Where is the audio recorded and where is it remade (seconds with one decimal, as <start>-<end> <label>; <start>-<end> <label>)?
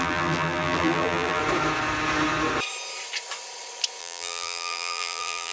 0.0-1.4 remade; 1.4-4.0 recorded; 4.0-5.5 remade